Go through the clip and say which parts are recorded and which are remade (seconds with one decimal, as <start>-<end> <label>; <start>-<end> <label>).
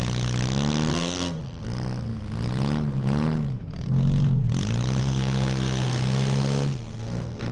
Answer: 0.0-0.9 recorded; 0.9-1.4 remade; 1.4-5.0 recorded; 5.0-7.5 remade